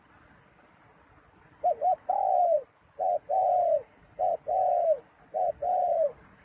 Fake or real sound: real